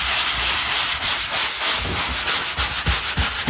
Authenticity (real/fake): real